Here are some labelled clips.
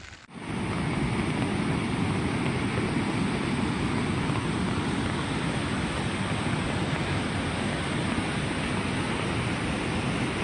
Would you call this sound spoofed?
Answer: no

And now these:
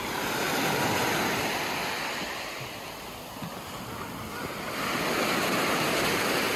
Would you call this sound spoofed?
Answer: no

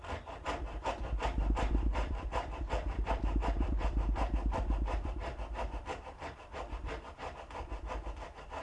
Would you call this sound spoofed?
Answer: yes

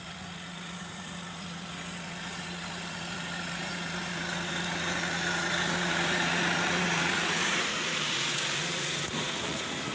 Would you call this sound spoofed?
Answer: yes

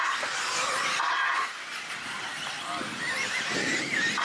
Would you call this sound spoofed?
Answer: no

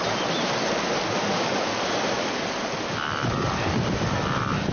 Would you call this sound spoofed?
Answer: no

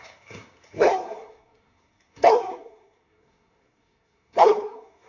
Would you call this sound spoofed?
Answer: yes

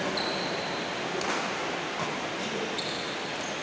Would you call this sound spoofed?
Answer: no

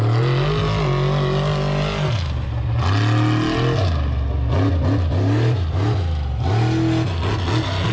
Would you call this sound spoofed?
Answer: no